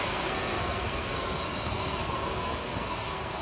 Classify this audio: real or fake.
fake